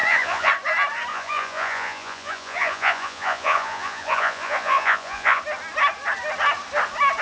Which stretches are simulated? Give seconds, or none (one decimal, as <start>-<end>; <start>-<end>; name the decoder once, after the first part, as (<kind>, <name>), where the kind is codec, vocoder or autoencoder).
0.0-0.5 (vocoder, Vocos); 1.1-5.4

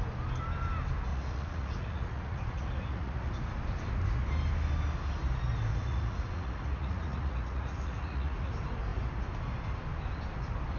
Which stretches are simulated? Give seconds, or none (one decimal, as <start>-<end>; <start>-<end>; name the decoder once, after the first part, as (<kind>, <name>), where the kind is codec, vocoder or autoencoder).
1.1-3.3 (vocoder, Vocos); 5.7-8.5